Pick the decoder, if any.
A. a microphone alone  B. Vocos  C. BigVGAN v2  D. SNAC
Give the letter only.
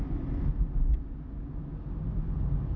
A